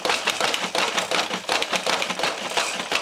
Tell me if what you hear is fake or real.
real